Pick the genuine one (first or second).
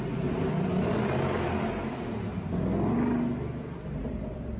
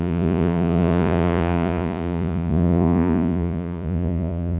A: first